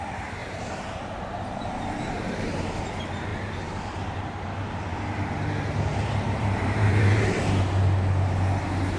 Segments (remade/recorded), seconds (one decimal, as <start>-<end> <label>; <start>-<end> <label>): 0.0-0.4 recorded; 0.4-2.6 remade; 2.6-3.3 recorded; 3.3-4.1 remade; 4.1-5.9 recorded; 5.9-7.6 remade; 7.6-9.0 recorded